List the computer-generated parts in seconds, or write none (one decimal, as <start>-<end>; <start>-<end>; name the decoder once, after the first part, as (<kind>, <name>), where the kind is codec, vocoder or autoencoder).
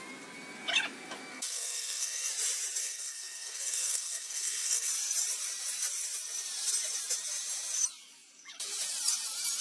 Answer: 1.3-2.3 (codec, SNAC); 2.8-4.9